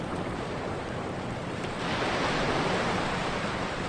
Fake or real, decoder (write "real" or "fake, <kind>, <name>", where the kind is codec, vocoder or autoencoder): fake, vocoder, BigVGAN v2